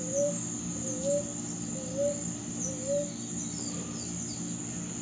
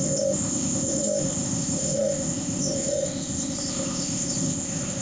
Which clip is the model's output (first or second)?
second